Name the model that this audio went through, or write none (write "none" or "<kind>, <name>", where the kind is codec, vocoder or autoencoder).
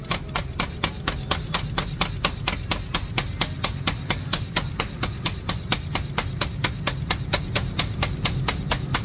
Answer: none